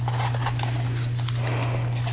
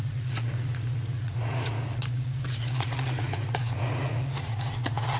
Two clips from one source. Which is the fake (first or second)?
second